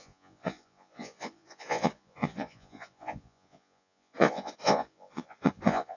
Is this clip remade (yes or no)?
yes